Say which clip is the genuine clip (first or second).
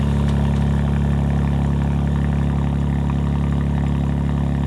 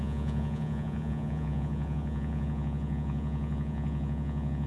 first